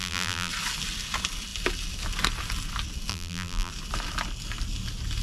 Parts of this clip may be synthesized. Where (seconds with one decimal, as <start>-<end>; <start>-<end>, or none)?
0.0-0.5; 3.1-3.7

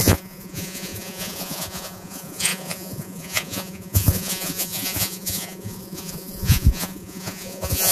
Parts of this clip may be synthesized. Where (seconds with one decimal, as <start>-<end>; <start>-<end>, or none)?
0.0-7.9

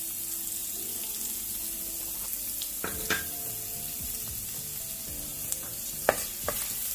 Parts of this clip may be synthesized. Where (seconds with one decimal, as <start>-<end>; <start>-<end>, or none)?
5.3-6.3

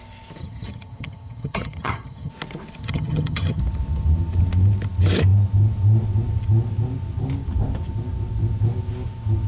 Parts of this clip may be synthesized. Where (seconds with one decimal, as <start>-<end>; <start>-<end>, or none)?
0.4-2.3; 2.8-3.6

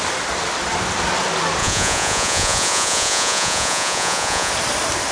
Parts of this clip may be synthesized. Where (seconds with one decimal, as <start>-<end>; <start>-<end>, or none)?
1.6-4.5

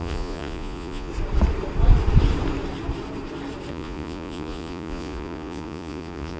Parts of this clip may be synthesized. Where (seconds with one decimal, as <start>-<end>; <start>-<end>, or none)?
0.0-1.1; 3.7-6.4

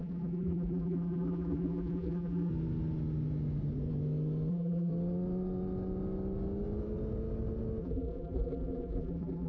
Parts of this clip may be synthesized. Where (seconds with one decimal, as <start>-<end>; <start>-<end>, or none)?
0.0-2.5; 4.5-4.9; 7.8-9.5

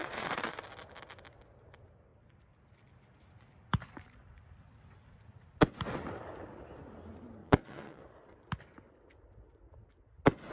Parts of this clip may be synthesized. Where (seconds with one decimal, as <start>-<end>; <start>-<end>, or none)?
0.0-0.6; 7.4-8.0